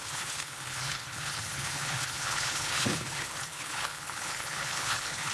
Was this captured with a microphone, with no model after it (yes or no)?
no